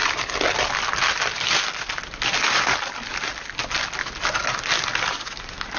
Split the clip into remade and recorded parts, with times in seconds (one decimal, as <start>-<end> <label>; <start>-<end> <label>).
0.0-5.8 recorded